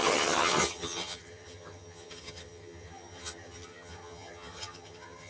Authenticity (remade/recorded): remade